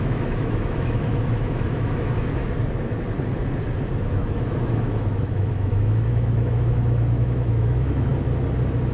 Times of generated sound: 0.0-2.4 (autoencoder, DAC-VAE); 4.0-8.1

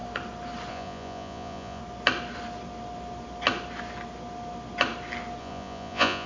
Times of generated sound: 0.7-1.8 (vocoder, Vocos); 5.4-6.3